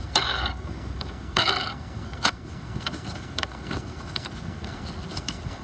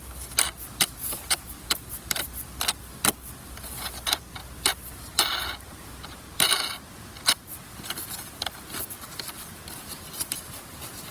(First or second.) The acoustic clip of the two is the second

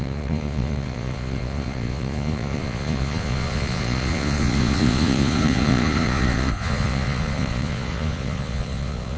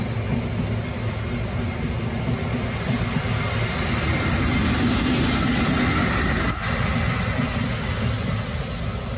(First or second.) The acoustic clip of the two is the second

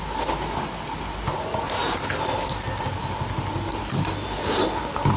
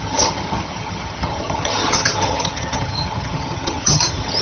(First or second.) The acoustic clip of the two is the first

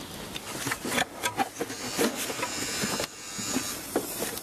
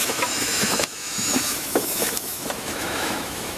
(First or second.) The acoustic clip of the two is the first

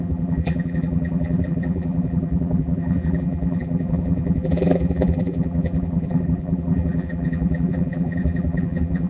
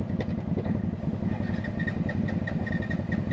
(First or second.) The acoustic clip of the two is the second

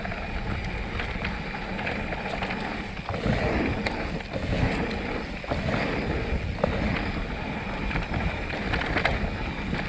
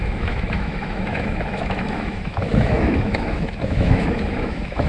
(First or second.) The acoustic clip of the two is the first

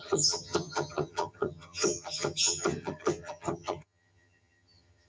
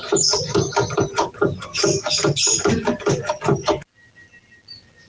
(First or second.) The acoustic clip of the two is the second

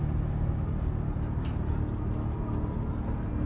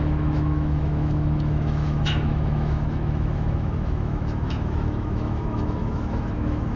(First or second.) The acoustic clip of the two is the first